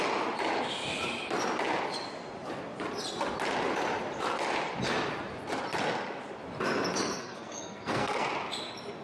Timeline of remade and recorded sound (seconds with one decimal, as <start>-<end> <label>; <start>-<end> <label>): 0.0-7.2 recorded; 7.2-8.3 remade; 8.3-9.0 recorded